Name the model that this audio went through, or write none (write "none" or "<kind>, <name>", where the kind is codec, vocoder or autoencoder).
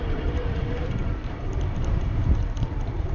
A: vocoder, BigVGAN v2